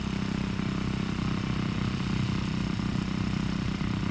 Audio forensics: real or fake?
real